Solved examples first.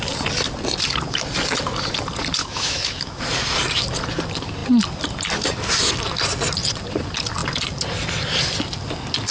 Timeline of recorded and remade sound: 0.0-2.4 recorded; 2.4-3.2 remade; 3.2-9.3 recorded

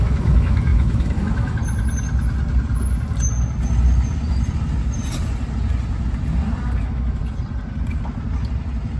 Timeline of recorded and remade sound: 0.0-1.6 remade; 1.6-6.8 recorded; 6.8-7.2 remade; 7.2-9.0 recorded

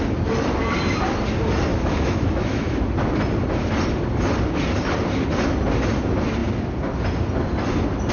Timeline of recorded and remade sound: 0.0-1.7 recorded; 1.7-2.8 remade; 2.8-8.1 recorded